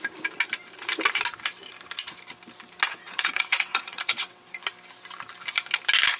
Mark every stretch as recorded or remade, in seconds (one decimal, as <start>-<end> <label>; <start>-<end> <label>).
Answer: 0.0-3.0 recorded; 3.0-4.6 remade; 4.6-6.2 recorded